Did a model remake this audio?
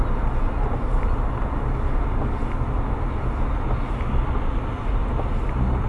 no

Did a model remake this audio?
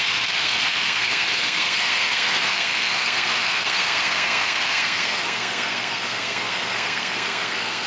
yes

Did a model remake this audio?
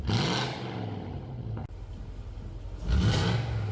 no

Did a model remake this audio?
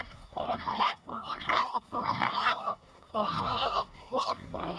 yes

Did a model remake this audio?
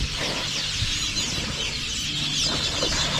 no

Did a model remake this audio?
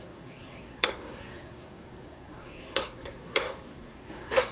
yes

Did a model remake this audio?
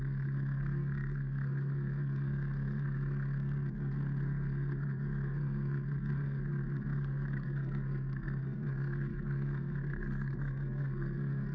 yes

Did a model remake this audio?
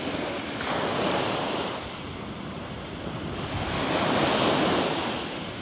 no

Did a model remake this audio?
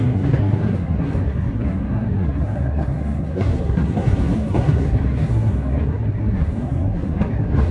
yes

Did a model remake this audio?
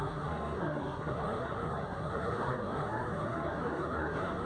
yes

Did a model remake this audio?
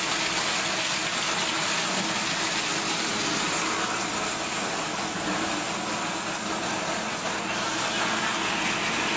no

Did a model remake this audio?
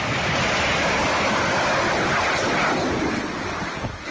no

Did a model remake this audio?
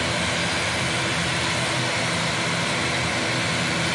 no